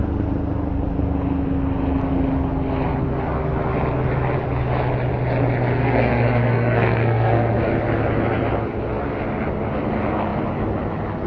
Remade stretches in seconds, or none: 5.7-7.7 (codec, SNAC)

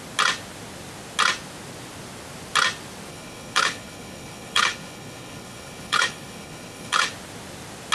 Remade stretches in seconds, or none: 3.1-7.1 (codec, HILCodec)

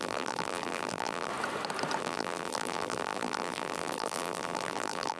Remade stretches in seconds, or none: 0.0-1.3 (vocoder, BigVGAN v2); 2.0-5.2

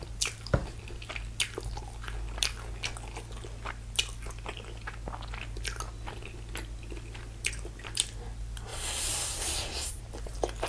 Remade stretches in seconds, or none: 8.7-10.0 (vocoder, Vocos)

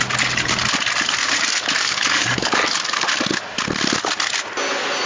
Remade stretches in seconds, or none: 1.2-3.1 (codec, DAC)

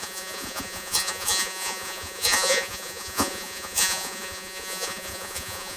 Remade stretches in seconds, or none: 0.0-5.8 (vocoder, Vocos)

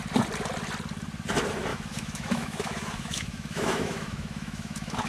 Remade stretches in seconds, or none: 1.7-5.1 (autoencoder, DAC-VAE)